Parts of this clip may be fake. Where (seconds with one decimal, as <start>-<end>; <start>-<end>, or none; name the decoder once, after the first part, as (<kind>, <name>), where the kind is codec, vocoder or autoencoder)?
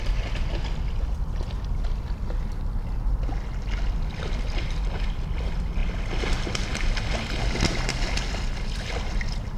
none